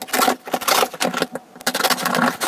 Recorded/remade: recorded